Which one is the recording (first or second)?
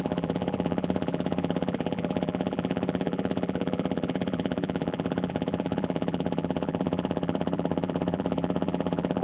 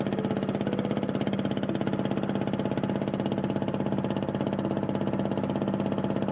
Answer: second